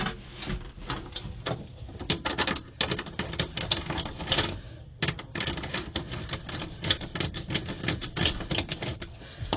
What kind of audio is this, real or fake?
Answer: real